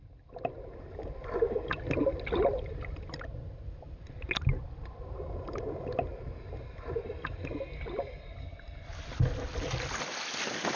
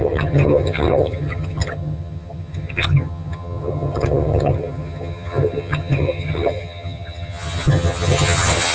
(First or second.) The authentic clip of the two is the first